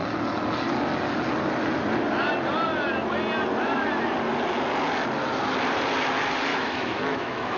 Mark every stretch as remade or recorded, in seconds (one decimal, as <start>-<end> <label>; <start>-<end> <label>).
0.0-6.5 recorded; 6.5-7.6 remade